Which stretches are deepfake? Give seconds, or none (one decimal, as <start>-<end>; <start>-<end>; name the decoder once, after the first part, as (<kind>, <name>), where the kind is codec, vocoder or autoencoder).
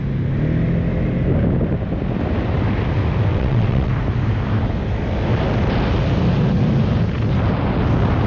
3.3-3.9 (vocoder, WaveNeXt)